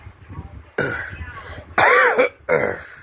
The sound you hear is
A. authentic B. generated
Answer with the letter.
A